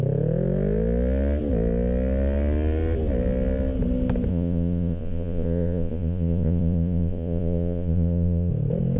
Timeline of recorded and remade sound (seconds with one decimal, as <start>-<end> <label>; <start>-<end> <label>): 0.0-4.3 recorded; 4.3-8.5 remade; 8.5-9.0 recorded